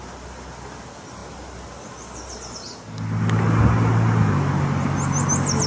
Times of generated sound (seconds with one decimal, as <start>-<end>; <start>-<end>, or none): none

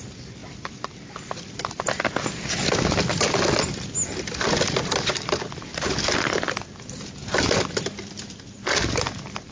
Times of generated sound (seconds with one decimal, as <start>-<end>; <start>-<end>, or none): 0.4-2.0